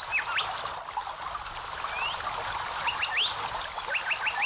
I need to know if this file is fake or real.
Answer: real